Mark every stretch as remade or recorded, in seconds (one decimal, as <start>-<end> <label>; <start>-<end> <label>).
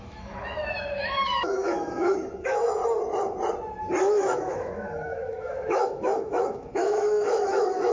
0.0-2.8 remade; 2.8-4.0 recorded; 4.0-7.9 remade